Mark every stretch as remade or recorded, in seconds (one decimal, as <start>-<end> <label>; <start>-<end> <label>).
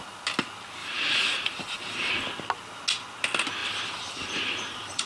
0.0-0.8 recorded; 0.8-2.1 remade; 2.1-3.6 recorded; 3.6-5.1 remade